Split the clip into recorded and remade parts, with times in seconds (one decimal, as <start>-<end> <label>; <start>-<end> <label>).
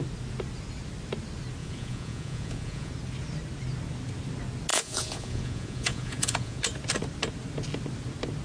0.0-1.6 recorded; 1.6-2.9 remade; 2.9-4.7 recorded; 4.7-6.6 remade; 6.6-8.4 recorded